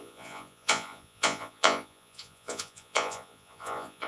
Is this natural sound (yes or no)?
no